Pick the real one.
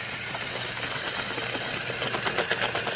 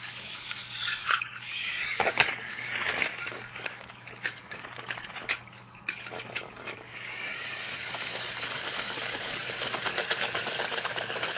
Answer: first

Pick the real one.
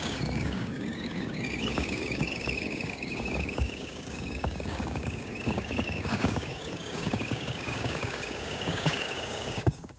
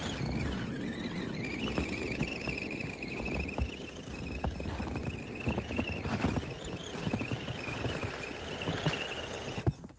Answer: second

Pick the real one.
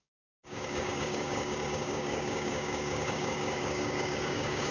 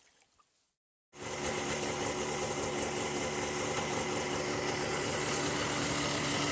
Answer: second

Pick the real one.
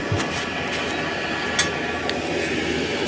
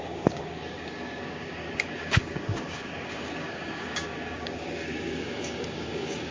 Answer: first